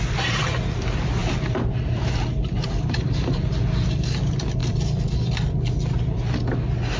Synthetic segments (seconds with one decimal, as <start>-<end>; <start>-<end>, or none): 1.2-3.5